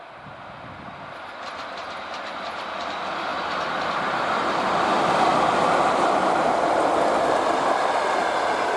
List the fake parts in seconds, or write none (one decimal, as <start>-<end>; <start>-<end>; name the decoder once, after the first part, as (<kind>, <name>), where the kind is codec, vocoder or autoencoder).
none